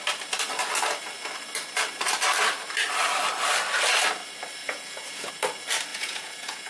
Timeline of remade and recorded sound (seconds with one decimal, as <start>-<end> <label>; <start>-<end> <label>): 0.0-4.6 recorded; 4.6-5.3 remade; 5.3-5.9 recorded; 5.9-6.7 remade

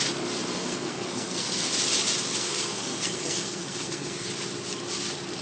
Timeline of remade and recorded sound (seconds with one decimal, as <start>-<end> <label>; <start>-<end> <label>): 0.0-0.5 recorded; 0.5-1.7 remade; 1.7-2.4 recorded; 2.4-4.3 remade; 4.3-5.4 recorded